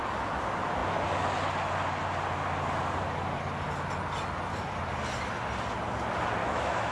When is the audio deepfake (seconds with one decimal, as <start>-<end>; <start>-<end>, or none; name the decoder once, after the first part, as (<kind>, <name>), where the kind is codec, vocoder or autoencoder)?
6.4-6.9 (autoencoder, DAC-VAE)